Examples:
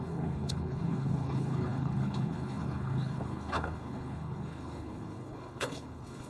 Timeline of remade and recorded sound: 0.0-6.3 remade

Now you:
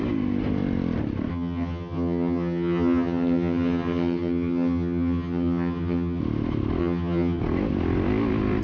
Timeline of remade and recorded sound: 0.0-1.3 recorded; 1.3-6.2 remade; 6.2-6.8 recorded; 6.8-7.4 remade; 7.4-8.6 recorded